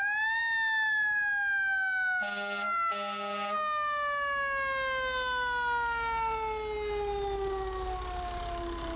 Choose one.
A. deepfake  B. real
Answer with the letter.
B